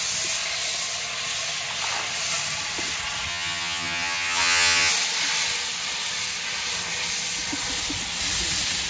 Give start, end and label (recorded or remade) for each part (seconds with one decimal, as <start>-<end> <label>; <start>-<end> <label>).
0.0-3.3 recorded; 3.3-4.9 remade; 4.9-8.9 recorded

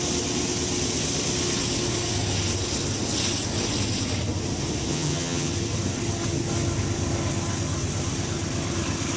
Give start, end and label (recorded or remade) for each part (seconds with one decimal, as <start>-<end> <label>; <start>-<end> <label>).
0.0-4.9 recorded; 4.9-5.5 remade; 5.5-9.2 recorded

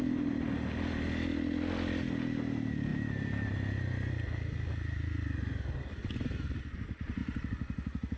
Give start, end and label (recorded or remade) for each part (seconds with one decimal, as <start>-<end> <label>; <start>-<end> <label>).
0.0-8.2 recorded

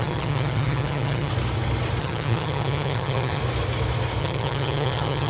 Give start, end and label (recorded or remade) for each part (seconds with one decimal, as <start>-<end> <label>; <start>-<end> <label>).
0.0-1.3 remade; 1.3-2.0 recorded; 2.0-3.4 remade; 3.4-4.2 recorded; 4.2-5.3 remade

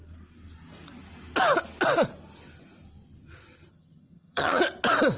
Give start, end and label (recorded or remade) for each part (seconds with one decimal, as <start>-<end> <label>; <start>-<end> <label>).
0.0-3.7 recorded; 3.7-4.6 remade; 4.6-5.2 recorded

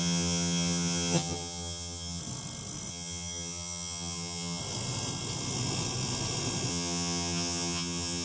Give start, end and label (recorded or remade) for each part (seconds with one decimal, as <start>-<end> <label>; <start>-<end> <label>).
0.0-2.2 remade; 2.2-2.9 recorded; 2.9-4.6 remade; 4.6-6.7 recorded; 6.7-8.2 remade

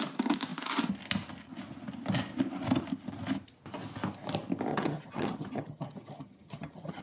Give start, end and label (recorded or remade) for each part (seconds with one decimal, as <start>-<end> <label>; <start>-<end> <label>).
0.0-4.7 recorded; 4.7-7.0 remade